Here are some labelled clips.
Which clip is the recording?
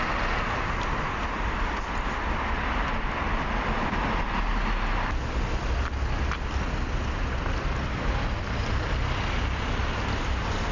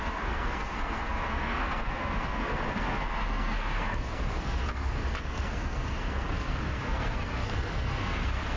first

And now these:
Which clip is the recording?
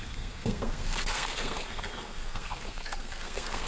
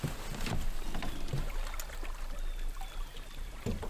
second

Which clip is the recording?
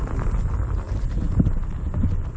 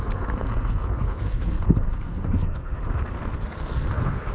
first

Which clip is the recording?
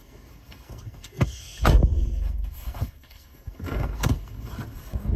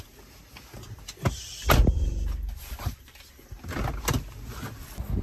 second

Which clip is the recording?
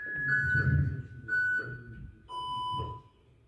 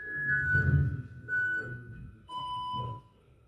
first